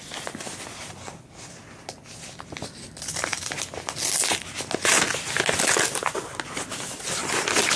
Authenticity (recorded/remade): recorded